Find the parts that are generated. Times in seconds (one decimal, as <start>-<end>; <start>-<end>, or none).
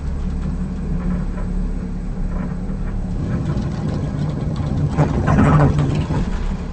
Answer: 3.2-6.2